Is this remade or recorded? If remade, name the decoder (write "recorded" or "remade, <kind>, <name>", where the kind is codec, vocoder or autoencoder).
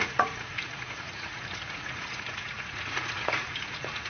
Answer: remade, vocoder, Vocos